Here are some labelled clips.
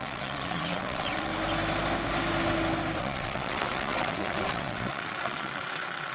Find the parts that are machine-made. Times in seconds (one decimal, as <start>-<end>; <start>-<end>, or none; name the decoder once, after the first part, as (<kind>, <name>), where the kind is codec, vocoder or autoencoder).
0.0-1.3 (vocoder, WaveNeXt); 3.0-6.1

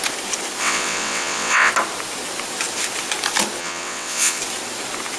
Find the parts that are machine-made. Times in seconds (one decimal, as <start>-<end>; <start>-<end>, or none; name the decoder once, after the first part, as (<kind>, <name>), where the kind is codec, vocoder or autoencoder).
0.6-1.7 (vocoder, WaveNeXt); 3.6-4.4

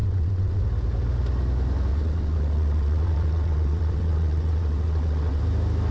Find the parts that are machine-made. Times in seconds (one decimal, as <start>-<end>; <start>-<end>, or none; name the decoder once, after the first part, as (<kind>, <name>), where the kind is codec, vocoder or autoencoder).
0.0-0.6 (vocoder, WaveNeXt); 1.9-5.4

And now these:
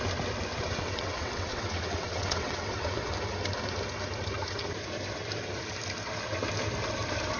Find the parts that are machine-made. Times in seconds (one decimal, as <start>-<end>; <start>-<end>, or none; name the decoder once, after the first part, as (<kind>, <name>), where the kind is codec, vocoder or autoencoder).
0.5-3.1 (vocoder, WaveNeXt)

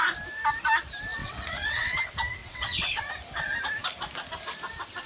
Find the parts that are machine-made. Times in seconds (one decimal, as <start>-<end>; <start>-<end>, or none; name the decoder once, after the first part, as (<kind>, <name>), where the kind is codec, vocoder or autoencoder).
1.2-2.0 (vocoder, WaveNeXt); 2.4-3.1

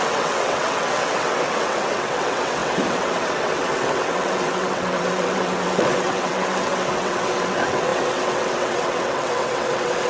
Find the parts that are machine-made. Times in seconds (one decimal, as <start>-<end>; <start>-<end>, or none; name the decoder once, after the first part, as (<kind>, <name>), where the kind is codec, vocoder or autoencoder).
0.0-10.1 (vocoder, WaveNeXt)

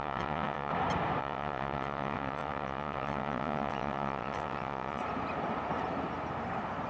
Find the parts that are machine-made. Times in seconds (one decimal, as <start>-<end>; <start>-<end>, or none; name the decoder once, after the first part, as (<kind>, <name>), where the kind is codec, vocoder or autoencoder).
0.0-0.7 (vocoder, WaveNeXt); 1.2-5.0